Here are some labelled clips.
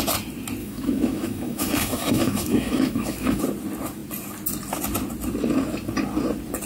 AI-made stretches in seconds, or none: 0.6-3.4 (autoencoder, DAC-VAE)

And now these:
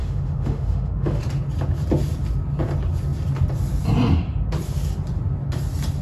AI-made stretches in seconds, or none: 0.0-1.2 (autoencoder, DAC-VAE)

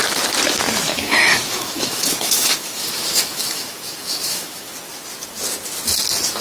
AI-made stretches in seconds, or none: 0.9-4.7 (autoencoder, DAC-VAE)

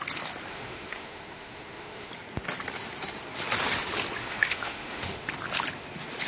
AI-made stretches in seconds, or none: 0.5-2.1 (autoencoder, DAC-VAE); 4.2-5.3

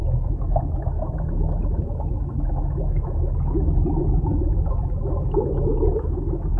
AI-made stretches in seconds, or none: 0.0-6.6 (autoencoder, DAC-VAE)